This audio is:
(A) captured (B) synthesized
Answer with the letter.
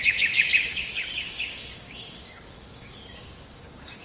B